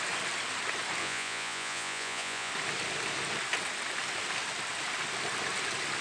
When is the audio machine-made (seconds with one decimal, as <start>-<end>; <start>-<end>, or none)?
1.0-2.5